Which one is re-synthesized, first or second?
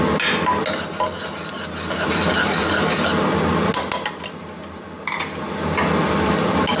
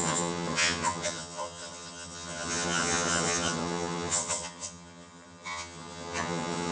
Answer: second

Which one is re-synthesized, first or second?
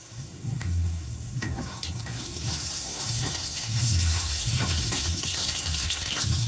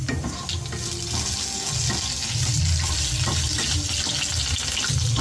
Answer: first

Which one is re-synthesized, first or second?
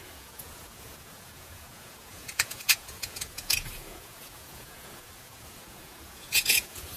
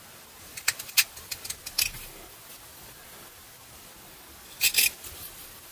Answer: first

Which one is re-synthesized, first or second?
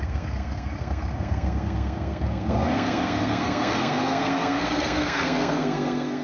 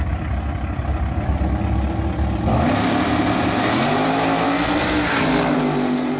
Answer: first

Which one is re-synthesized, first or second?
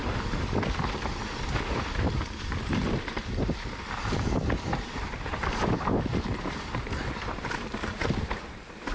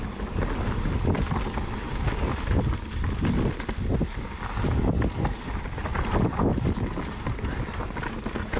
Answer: first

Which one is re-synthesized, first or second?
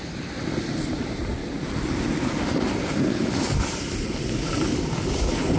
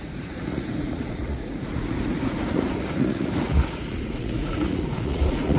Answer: second